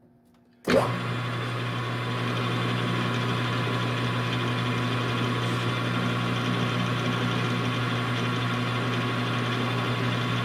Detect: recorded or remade recorded